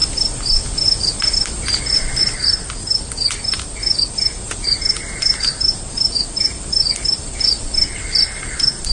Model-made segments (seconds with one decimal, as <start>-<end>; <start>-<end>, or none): none